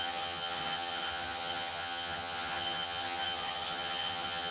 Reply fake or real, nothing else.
fake